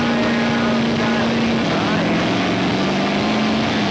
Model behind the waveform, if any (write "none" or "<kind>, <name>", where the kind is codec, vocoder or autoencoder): none